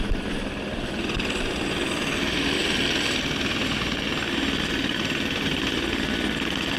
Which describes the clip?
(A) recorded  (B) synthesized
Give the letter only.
A